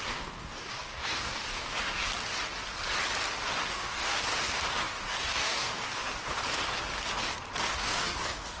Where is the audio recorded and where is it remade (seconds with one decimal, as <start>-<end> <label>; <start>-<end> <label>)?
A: 0.0-2.0 remade; 2.0-3.7 recorded; 3.7-4.2 remade; 4.2-4.8 recorded; 4.8-6.1 remade; 6.1-7.7 recorded; 7.7-8.6 remade